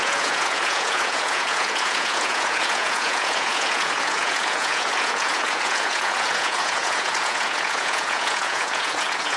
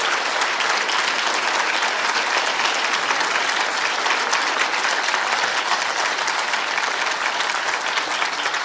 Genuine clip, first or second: second